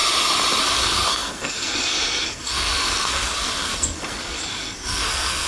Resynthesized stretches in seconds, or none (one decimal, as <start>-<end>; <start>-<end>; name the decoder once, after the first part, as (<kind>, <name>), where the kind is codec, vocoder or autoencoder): 0.6-5.5 (codec, SNAC)